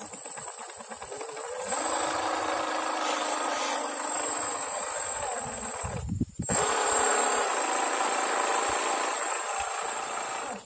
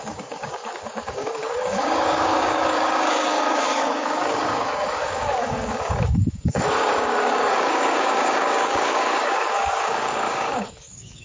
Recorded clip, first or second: first